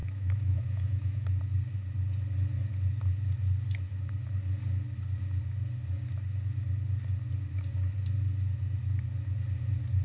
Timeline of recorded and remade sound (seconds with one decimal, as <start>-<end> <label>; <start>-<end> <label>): 0.0-1.4 remade; 1.4-10.0 recorded